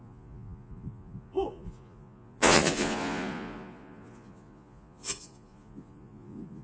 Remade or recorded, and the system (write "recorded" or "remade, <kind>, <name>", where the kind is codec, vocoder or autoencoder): remade, vocoder, Vocos